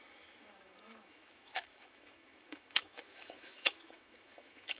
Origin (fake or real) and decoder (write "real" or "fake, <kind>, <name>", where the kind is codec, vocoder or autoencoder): fake, autoencoder, DAC-VAE